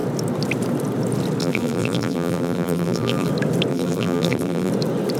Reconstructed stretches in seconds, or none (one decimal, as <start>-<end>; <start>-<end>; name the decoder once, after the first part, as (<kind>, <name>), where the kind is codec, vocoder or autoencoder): 1.4-3.3 (vocoder, BigVGAN v2); 3.7-4.7